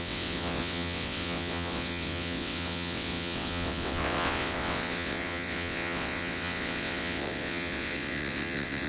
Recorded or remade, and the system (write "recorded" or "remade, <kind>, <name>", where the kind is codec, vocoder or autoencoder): remade, vocoder, WaveNeXt